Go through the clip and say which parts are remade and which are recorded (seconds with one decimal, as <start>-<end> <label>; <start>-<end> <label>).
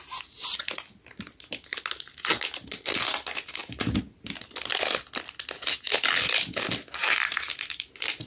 0.0-3.6 recorded; 3.6-4.4 remade; 4.4-7.0 recorded; 7.0-8.3 remade